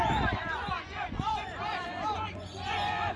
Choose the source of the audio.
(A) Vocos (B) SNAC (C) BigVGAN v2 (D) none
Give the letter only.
A